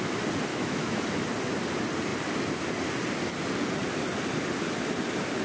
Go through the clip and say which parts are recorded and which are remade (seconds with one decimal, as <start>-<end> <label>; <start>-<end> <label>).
0.0-0.5 recorded; 0.5-1.0 remade; 1.0-5.4 recorded